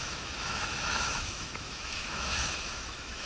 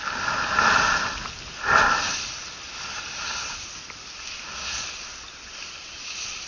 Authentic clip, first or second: second